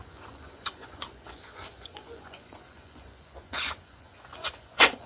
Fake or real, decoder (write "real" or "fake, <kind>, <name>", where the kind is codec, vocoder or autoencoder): fake, vocoder, Vocos